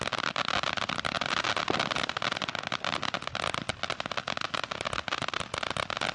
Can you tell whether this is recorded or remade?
recorded